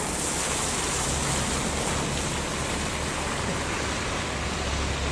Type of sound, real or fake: real